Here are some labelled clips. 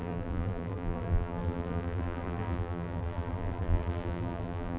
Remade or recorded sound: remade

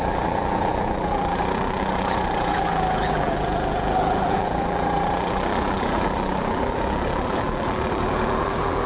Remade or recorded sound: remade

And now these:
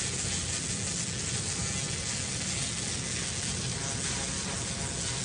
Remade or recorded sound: recorded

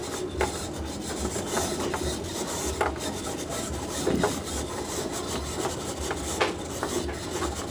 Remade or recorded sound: recorded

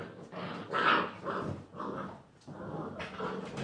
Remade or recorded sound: recorded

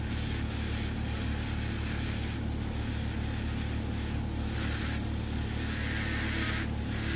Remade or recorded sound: recorded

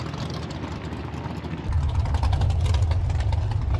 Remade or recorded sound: remade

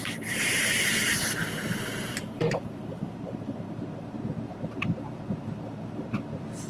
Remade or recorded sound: remade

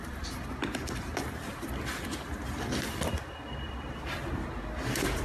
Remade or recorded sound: remade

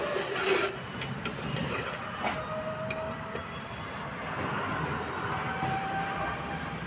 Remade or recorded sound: recorded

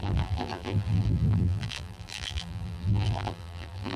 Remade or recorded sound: remade